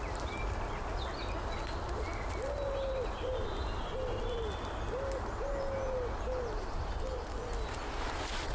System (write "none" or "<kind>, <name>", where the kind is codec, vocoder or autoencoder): none